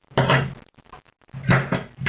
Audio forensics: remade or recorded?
recorded